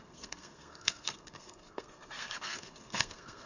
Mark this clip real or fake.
fake